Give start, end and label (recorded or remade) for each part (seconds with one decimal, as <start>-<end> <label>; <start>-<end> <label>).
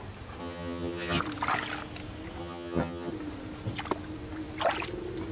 0.0-0.4 recorded; 0.4-1.2 remade; 1.2-2.4 recorded; 2.4-3.1 remade; 3.1-5.3 recorded